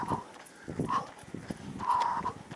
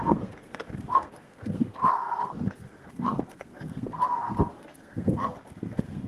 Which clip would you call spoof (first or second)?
second